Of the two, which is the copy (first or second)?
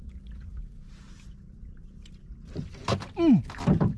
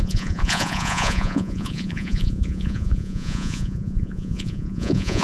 second